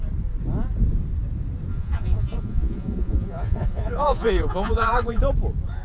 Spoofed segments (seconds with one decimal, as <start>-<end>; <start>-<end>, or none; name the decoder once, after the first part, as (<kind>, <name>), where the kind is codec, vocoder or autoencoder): 1.7-5.2 (vocoder, Vocos)